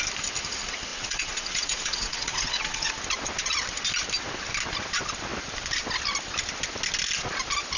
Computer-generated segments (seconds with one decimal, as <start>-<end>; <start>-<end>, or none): 0.9-2.9